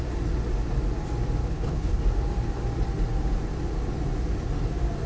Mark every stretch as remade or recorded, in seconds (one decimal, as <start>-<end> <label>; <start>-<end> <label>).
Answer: 0.0-1.4 recorded; 1.4-2.0 remade; 2.0-5.1 recorded